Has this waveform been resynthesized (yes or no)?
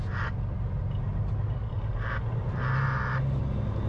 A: no